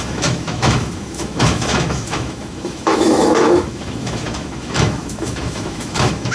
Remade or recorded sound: remade